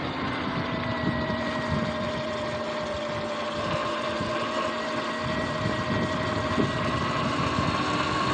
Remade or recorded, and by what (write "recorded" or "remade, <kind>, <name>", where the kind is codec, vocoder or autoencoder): recorded